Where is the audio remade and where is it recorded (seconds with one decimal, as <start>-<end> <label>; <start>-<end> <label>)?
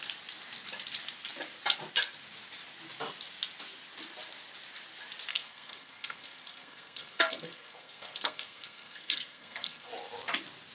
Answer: 0.0-5.3 recorded; 5.3-9.9 remade; 9.9-10.7 recorded